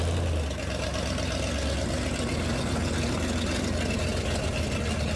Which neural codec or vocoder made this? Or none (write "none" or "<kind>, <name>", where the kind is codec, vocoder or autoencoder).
none